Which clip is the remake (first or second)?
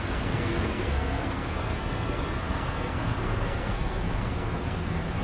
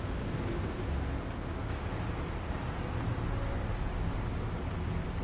first